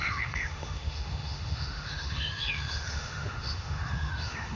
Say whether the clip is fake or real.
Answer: fake